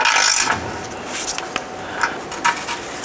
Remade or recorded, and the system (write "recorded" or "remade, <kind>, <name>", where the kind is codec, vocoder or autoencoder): recorded